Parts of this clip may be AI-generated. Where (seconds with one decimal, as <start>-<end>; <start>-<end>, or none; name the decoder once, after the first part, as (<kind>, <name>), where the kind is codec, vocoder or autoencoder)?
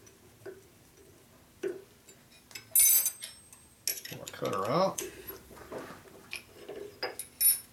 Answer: 3.9-5.7 (vocoder, BigVGAN v2)